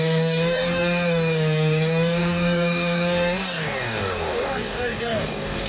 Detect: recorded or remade remade